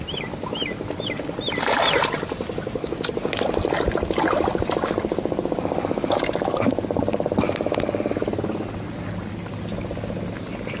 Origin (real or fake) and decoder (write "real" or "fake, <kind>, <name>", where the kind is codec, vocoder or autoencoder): real